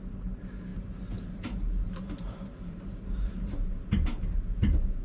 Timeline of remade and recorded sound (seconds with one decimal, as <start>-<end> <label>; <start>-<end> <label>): 0.0-0.7 recorded; 0.7-3.7 remade; 3.7-5.0 recorded